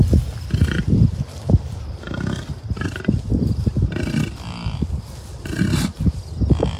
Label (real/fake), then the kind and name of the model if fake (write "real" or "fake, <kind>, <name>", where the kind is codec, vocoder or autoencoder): real